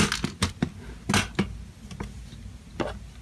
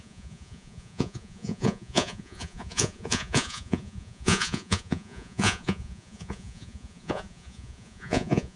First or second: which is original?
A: first